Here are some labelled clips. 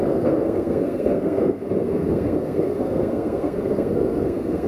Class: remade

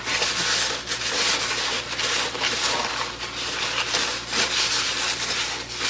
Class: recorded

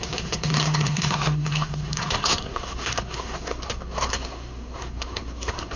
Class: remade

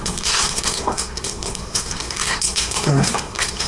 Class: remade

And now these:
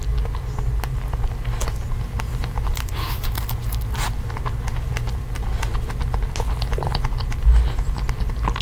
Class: recorded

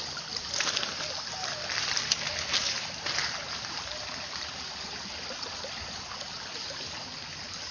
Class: recorded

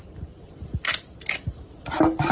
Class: recorded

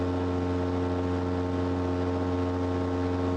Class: recorded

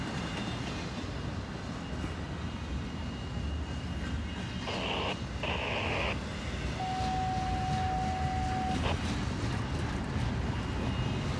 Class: recorded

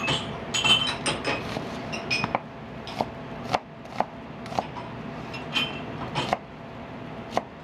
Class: recorded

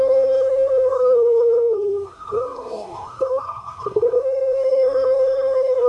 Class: remade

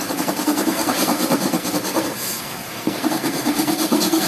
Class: remade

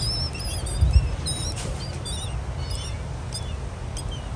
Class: recorded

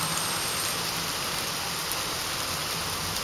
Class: recorded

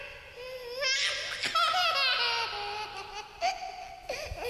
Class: recorded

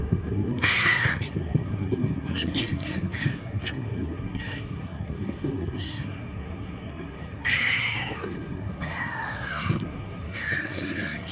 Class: remade